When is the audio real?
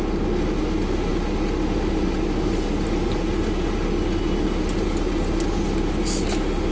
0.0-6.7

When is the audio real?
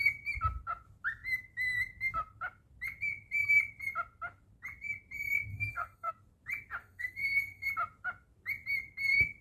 0.0-5.5; 6.1-6.8; 7.7-9.4